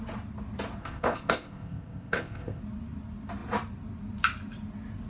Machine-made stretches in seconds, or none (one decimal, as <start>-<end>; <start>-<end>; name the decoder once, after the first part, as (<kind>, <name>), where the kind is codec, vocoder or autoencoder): 0.8-2.6 (codec, ZipCodec)